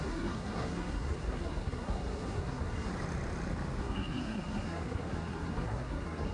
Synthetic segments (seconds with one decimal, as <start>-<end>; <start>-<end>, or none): 0.0-2.9; 3.8-6.3